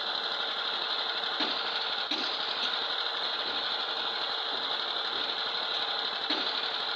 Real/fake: real